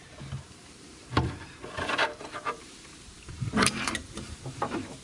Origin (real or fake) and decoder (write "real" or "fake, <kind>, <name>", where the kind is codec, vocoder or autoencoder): fake, vocoder, BigVGAN v2